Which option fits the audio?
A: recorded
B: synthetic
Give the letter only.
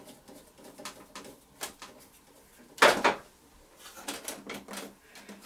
A